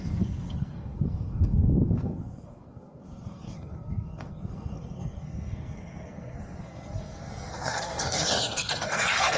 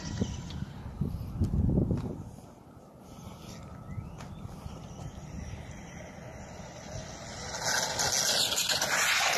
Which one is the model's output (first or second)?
first